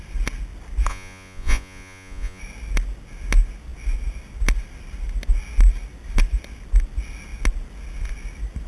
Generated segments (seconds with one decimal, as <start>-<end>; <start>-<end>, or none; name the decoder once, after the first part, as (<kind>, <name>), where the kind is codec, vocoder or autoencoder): 0.9-2.4 (vocoder, Vocos)